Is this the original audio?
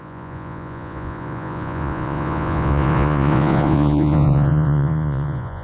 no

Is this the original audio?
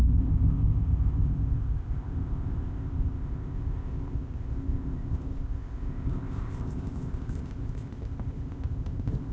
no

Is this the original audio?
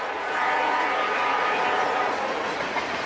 no